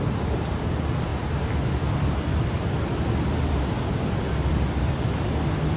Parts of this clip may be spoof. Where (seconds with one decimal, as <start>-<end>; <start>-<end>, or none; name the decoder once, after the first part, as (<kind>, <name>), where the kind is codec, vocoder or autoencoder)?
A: none